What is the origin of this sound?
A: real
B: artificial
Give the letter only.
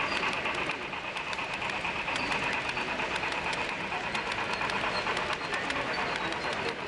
A